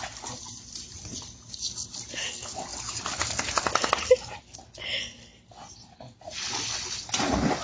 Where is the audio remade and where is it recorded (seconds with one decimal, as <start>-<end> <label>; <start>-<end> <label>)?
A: 0.0-7.6 recorded